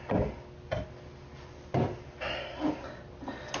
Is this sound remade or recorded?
recorded